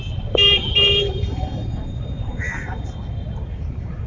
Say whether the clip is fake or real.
fake